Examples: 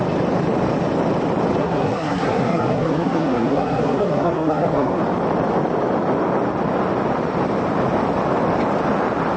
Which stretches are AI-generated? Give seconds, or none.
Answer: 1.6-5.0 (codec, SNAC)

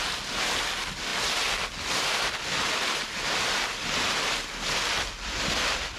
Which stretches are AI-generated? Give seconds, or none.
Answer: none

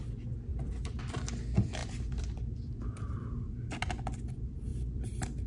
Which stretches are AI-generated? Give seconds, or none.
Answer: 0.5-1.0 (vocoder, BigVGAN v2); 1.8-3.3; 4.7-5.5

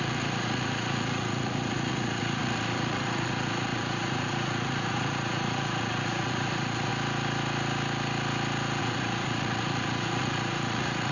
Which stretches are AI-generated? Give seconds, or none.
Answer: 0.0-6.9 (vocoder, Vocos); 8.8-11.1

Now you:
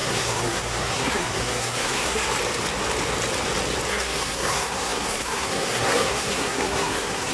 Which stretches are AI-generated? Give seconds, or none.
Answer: 0.0-2.3 (codec, SNAC); 3.9-7.3